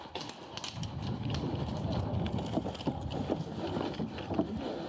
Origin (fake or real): real